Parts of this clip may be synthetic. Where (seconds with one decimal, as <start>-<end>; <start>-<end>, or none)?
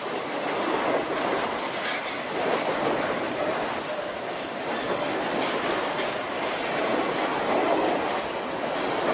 1.3-6.5